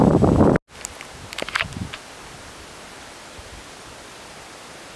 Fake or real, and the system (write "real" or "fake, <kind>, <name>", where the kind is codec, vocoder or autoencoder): real